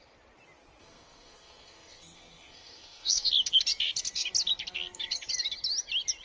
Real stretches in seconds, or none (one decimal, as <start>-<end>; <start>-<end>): 0.0-0.8; 3.3-6.2

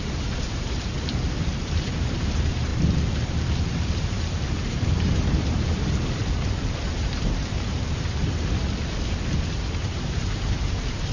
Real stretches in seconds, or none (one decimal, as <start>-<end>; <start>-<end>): 2.7-3.8; 6.2-6.9; 8.2-9.4

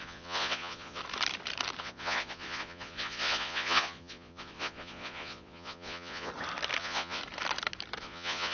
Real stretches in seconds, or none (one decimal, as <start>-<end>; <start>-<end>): 1.0-1.8; 6.3-6.8; 7.2-8.0

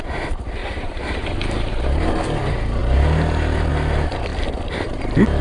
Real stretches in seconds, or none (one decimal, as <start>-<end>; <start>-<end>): 0.0-0.6; 1.7-5.4